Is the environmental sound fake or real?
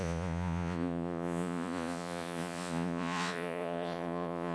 fake